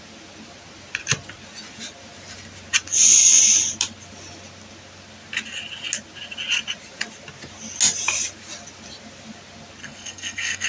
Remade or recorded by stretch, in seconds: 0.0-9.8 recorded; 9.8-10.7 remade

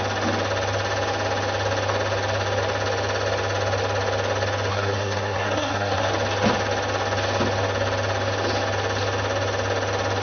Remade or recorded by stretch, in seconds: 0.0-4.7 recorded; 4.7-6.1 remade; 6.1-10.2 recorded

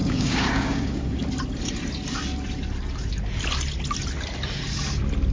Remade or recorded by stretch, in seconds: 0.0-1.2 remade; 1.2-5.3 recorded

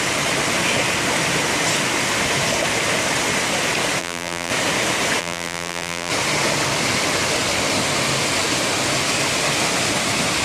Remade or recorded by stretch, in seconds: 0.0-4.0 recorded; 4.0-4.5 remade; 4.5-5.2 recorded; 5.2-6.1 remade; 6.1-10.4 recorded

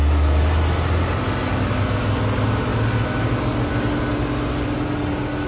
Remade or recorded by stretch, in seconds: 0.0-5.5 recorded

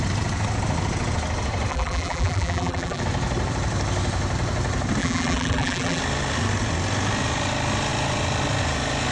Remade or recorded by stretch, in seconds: 0.0-1.7 recorded; 1.7-3.0 remade; 3.0-5.0 recorded; 5.0-6.0 remade; 6.0-9.1 recorded

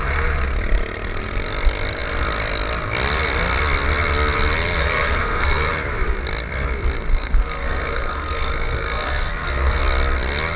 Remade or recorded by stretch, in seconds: 0.0-4.8 recorded; 4.8-5.7 remade; 5.7-7.1 recorded; 7.1-9.8 remade; 9.8-10.6 recorded